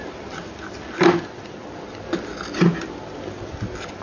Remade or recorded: recorded